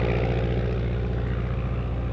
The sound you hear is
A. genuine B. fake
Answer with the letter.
A